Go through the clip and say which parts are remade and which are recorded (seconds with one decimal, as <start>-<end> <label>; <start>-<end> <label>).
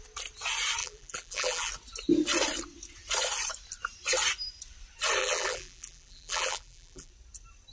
0.0-0.8 recorded; 0.8-1.7 remade; 1.7-5.2 recorded; 5.2-7.1 remade; 7.1-7.7 recorded